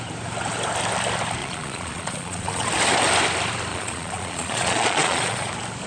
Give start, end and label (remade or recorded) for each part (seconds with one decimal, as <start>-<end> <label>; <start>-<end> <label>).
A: 0.0-1.4 recorded; 1.4-2.7 remade; 2.7-3.7 recorded; 3.7-5.5 remade; 5.5-5.9 recorded